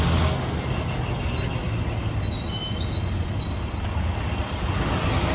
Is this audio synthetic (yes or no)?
no